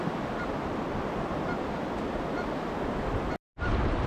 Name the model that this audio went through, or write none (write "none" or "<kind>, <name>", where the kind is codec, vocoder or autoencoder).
none